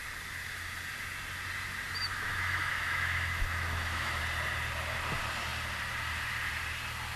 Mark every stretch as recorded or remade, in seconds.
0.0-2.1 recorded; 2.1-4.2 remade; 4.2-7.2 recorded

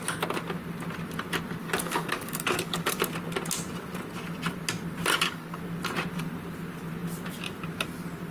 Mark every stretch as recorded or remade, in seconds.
0.0-1.6 recorded; 1.6-3.0 remade; 3.0-5.1 recorded; 5.1-5.6 remade; 5.6-8.3 recorded